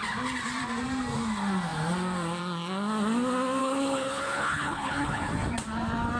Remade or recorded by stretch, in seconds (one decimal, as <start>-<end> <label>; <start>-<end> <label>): 0.0-3.6 recorded; 3.6-5.3 remade; 5.3-6.2 recorded